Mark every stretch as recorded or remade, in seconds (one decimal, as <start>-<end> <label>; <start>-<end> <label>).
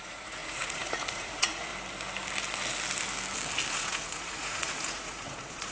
0.0-1.7 remade; 1.7-3.7 recorded; 3.7-5.7 remade